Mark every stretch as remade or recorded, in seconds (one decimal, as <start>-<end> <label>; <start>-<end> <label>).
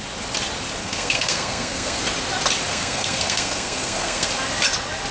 0.0-0.8 recorded; 0.8-2.0 remade; 2.0-2.7 recorded; 2.7-4.3 remade; 4.3-5.1 recorded